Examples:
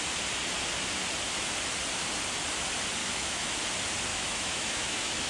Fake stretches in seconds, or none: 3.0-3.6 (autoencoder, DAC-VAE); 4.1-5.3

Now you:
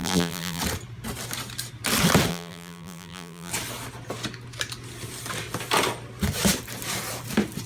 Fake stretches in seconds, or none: 0.0-0.6 (vocoder, BigVGAN v2); 2.3-3.5

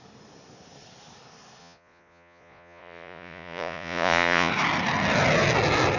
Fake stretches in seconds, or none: 1.6-4.5 (vocoder, Vocos)

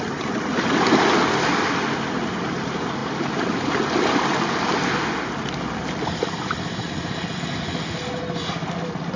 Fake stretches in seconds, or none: none